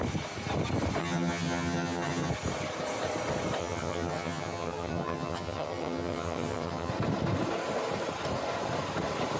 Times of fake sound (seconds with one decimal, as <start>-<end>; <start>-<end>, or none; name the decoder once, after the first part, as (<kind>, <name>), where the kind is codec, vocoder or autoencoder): 1.0-2.3 (vocoder, HiFi-GAN); 3.6-6.9